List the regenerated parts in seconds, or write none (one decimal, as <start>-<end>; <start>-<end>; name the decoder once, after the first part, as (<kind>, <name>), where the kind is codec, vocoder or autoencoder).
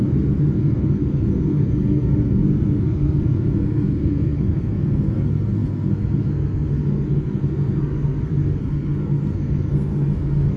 0.0-10.6 (codec, SNAC)